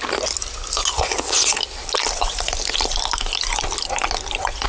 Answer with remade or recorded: recorded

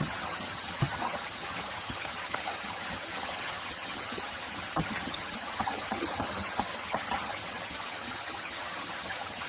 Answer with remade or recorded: remade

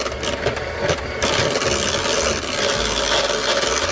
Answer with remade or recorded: recorded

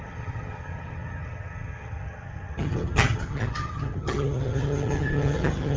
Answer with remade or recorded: remade